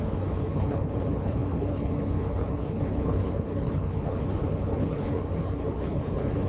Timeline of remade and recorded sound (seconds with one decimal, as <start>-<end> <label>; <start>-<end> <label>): 0.0-6.5 remade